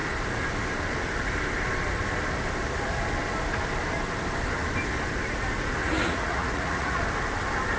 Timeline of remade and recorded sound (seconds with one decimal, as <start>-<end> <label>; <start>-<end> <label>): 0.0-5.8 recorded; 5.8-7.0 remade; 7.0-7.8 recorded